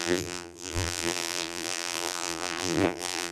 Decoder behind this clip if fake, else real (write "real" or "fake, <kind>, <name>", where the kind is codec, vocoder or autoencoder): fake, vocoder, BigVGAN v2